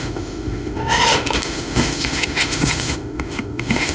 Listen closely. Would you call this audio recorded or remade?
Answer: remade